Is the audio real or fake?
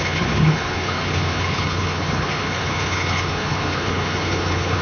fake